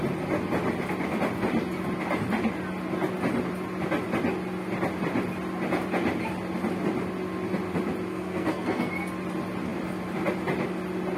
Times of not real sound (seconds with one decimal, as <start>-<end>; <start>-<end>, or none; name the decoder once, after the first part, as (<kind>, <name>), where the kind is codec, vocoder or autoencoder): 8.1-8.9 (codec, SNAC)